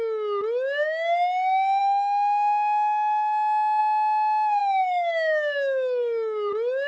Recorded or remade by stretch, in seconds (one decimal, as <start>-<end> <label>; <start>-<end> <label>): 0.0-4.6 recorded; 4.6-6.5 remade; 6.5-6.9 recorded